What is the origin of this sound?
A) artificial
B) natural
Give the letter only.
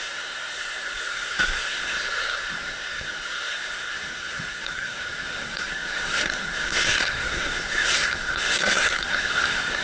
A